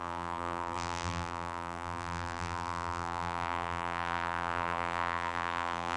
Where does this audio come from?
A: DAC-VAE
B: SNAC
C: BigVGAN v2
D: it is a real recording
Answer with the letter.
C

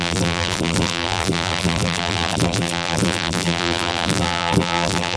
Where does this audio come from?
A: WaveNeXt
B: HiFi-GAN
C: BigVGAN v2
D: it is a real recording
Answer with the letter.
C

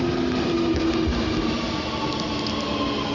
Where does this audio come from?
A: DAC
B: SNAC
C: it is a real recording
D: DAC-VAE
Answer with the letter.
C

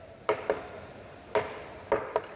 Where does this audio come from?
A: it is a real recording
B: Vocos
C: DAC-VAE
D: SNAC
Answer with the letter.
A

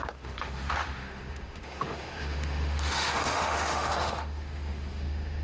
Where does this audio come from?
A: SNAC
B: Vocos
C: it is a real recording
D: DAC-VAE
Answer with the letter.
D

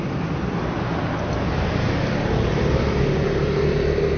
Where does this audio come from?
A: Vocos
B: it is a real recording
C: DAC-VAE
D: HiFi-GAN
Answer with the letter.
B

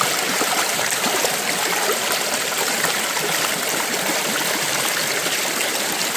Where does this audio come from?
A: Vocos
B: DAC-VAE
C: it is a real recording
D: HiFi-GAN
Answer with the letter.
C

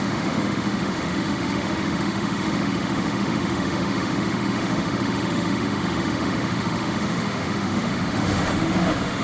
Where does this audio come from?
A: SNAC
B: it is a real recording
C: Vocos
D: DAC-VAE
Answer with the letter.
D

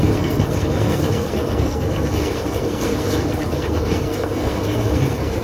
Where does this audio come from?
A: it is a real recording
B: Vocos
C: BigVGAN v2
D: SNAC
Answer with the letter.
D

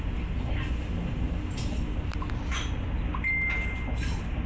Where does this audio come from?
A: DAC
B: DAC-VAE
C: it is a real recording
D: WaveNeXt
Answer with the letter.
C